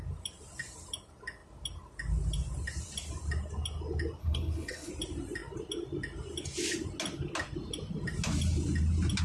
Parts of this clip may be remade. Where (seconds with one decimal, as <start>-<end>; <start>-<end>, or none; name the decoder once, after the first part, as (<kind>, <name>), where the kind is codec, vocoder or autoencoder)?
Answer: 4.2-4.9 (codec, HILCodec)